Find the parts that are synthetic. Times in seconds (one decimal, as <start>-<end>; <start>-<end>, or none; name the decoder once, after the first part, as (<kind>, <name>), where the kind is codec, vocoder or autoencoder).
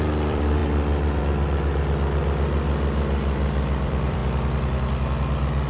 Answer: 0.0-5.7 (vocoder, BigVGAN v2)